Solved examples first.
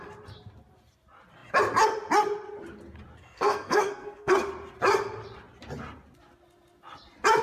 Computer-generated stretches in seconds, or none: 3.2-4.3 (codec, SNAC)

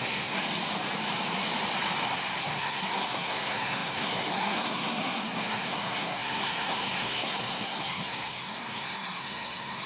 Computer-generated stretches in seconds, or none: 0.0-0.4 (codec, SNAC); 2.4-9.9

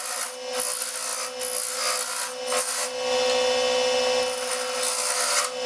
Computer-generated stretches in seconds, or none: none

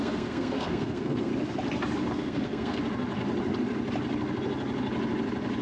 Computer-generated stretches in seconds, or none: 0.0-1.3 (codec, SNAC); 2.1-2.8